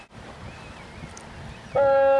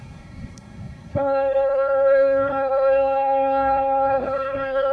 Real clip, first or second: first